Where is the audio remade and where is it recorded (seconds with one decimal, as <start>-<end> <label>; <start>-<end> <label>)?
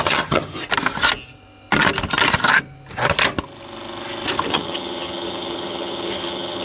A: 0.0-0.6 remade; 0.6-4.5 recorded; 4.5-6.6 remade